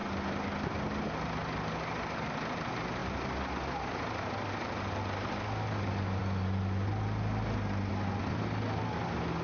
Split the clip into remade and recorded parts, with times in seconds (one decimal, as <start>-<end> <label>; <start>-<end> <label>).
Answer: 0.0-9.4 recorded